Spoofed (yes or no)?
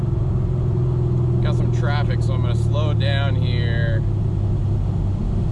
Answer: no